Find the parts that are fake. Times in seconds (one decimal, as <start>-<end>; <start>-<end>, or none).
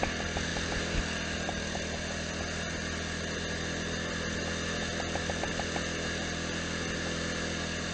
none